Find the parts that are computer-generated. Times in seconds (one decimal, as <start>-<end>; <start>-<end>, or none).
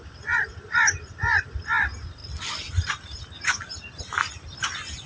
none